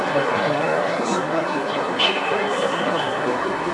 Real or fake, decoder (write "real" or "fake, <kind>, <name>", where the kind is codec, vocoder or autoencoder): fake, codec, SNAC